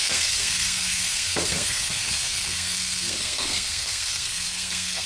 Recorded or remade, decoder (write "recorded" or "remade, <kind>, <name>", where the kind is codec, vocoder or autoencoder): remade, codec, SNAC